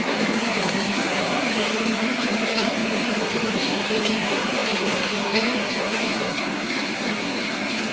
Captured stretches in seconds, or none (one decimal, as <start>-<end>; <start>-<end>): none

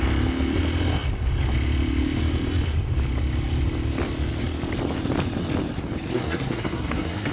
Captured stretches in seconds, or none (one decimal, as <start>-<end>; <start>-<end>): 0.0-6.1

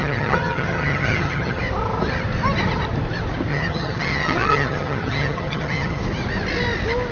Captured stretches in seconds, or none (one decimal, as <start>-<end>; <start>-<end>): 1.6-3.5; 6.0-7.1